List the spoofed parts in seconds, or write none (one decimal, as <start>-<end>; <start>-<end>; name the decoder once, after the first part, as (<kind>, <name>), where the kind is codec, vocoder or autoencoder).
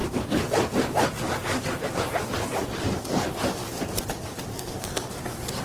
4.5-5.1 (codec, SNAC)